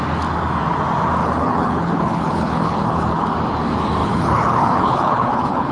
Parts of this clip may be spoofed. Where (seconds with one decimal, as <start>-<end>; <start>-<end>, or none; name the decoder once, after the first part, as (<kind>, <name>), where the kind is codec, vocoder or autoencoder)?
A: 1.2-3.3 (codec, HILCodec); 4.0-5.7